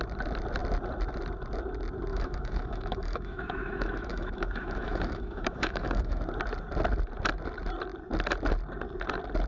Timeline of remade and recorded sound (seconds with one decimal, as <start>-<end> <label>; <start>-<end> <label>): 0.0-2.1 recorded; 2.1-6.2 remade; 6.2-9.5 recorded